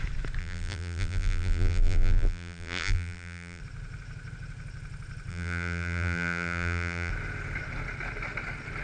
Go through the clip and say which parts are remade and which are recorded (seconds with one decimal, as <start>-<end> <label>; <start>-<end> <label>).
0.0-0.4 recorded; 0.4-3.6 remade; 3.6-5.3 recorded; 5.3-7.1 remade; 7.1-8.8 recorded